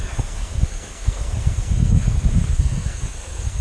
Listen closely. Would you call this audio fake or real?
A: fake